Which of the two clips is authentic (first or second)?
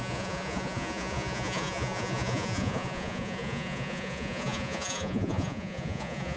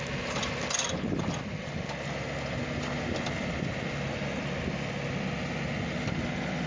second